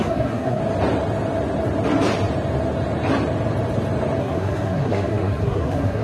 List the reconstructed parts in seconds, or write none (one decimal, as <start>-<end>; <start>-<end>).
0.0-0.6; 4.2-6.0